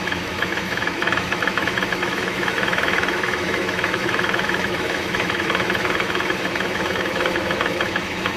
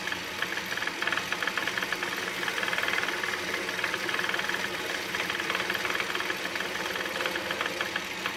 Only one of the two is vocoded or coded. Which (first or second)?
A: first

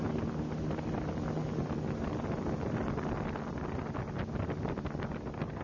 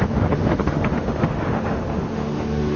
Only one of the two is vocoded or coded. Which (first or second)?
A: second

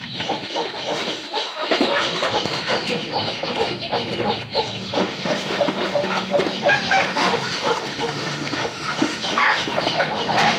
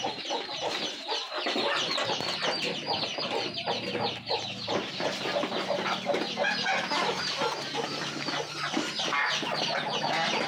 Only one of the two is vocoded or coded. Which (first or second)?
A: first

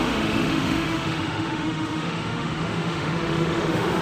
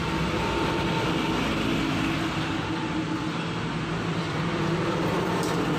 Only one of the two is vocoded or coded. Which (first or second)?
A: first